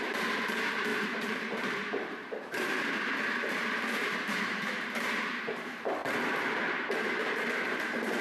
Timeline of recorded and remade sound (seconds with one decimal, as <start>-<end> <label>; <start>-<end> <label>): 0.0-6.0 remade; 6.0-6.5 recorded; 6.5-8.2 remade